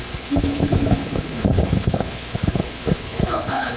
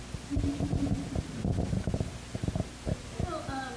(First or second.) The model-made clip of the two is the first